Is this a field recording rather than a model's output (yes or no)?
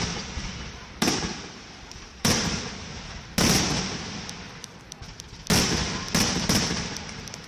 yes